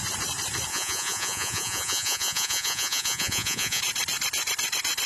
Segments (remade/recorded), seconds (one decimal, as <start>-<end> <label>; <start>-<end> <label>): 0.0-0.7 recorded; 0.7-3.8 remade; 3.8-5.1 recorded